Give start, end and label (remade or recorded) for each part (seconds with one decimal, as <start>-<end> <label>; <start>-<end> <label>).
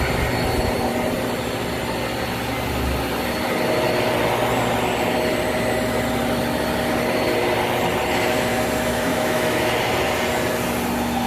0.0-9.1 recorded; 9.1-9.7 remade; 9.7-11.3 recorded